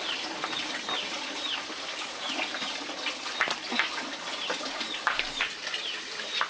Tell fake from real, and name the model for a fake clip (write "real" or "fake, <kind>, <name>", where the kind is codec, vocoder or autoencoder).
real